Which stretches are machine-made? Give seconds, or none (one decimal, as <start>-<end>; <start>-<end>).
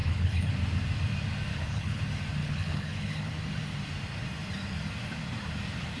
0.0-0.5; 1.5-2.0; 2.4-3.3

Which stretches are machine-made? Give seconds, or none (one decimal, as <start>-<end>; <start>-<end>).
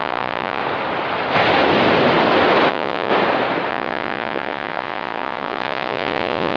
0.0-0.6; 2.7-3.1; 3.7-6.6